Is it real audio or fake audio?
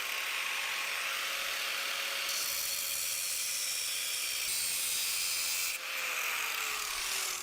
real